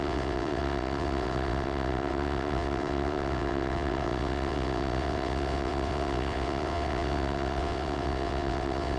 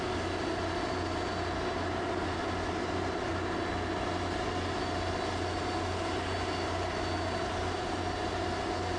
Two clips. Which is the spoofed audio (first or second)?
first